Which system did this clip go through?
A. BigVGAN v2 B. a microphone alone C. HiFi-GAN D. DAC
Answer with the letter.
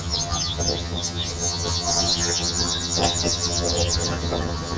C